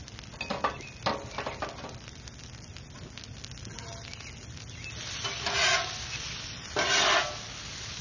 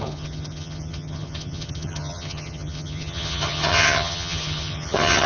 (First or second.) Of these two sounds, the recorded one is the first